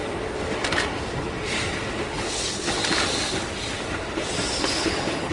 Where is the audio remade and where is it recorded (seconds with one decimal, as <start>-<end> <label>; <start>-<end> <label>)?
0.0-2.1 recorded; 2.1-2.8 remade; 2.8-4.6 recorded; 4.6-5.3 remade